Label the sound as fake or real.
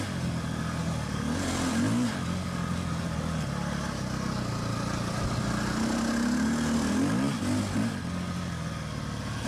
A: real